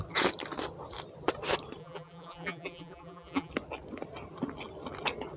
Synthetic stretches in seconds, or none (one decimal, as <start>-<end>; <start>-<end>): 1.8-3.5